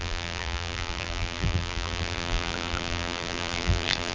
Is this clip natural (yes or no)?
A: no